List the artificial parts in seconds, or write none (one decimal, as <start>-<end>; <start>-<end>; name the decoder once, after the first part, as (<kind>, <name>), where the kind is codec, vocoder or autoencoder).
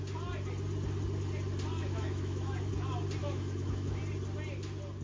1.8-2.7 (autoencoder, DAC-VAE); 3.2-4.0